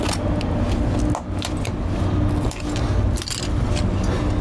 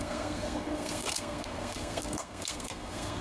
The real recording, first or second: first